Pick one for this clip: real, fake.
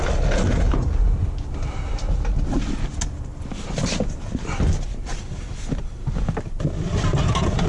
real